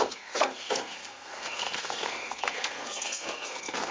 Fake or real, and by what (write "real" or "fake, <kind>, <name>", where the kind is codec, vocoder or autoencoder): fake, codec, SNAC